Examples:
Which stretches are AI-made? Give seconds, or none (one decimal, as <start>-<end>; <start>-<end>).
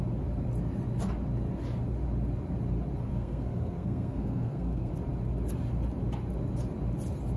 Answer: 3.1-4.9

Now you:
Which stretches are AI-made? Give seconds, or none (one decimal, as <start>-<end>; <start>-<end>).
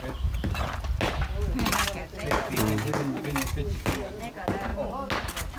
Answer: none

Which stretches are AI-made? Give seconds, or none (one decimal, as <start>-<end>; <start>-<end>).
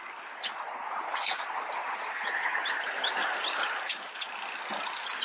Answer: none